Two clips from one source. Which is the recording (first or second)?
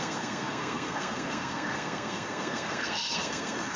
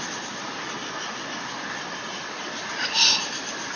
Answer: second